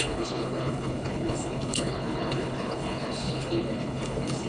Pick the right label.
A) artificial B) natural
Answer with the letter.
A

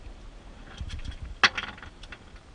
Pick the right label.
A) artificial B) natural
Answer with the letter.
B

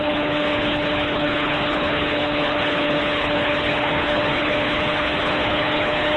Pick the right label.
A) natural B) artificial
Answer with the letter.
B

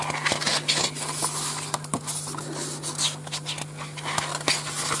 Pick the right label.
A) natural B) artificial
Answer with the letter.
A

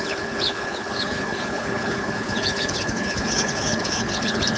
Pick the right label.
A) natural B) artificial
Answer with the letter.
B